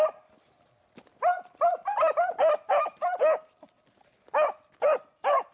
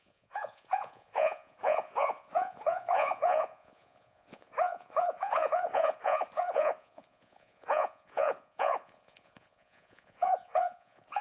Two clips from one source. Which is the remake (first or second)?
second